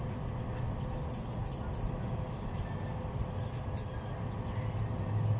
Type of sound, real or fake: real